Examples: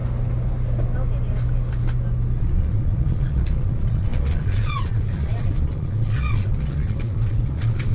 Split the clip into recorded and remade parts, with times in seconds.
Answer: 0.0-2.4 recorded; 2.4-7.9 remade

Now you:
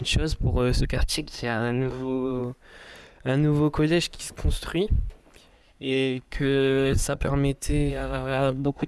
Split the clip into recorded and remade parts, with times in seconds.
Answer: 0.0-0.8 recorded; 0.8-2.4 remade; 2.4-5.5 recorded; 5.5-7.3 remade; 7.3-7.9 recorded; 7.9-8.9 remade

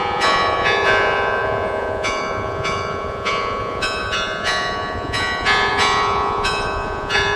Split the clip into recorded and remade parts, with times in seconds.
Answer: 0.0-7.4 remade